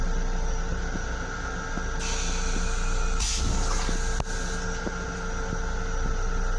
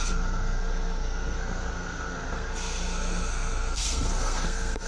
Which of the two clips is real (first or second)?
first